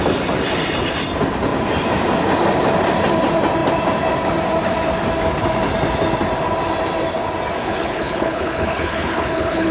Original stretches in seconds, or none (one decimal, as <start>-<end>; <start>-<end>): 0.0-7.6